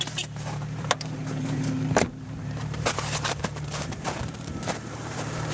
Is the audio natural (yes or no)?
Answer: no